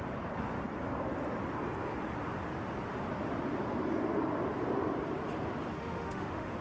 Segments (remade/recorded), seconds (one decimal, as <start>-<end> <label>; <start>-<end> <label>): 0.0-5.7 recorded; 5.7-6.6 remade